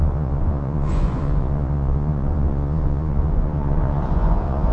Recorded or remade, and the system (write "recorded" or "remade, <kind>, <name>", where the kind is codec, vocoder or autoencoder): remade, vocoder, Vocos